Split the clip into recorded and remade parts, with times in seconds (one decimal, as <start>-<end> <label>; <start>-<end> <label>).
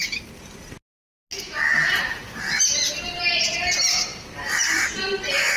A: 0.0-5.6 recorded